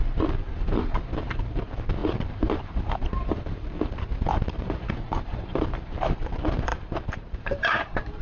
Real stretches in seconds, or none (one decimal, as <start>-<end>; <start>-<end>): none